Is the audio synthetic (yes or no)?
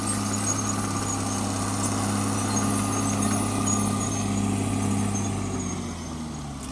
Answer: no